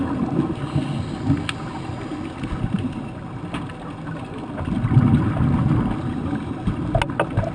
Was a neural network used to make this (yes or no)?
no